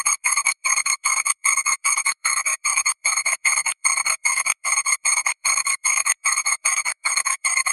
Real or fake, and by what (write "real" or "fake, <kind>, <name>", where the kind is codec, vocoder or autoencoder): fake, codec, SNAC